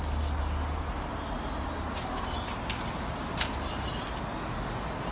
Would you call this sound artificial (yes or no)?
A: no